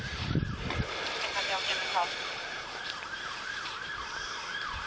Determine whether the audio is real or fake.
fake